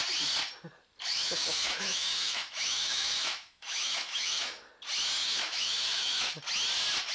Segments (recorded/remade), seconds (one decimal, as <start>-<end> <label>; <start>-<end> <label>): 0.0-1.1 recorded; 1.1-4.7 remade; 4.7-5.2 recorded; 5.2-6.4 remade; 6.4-7.1 recorded